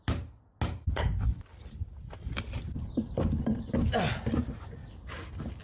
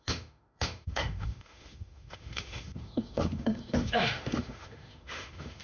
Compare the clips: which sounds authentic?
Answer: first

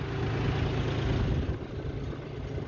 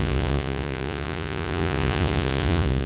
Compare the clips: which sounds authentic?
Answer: first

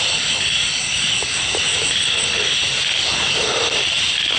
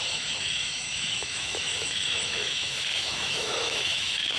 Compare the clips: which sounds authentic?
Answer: first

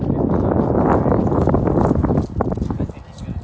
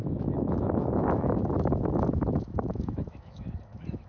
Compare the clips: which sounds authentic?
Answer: first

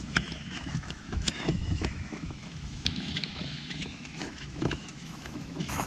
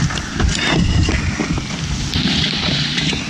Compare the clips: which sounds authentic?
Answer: second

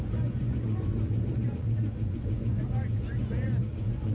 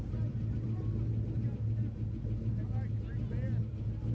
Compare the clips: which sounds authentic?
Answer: second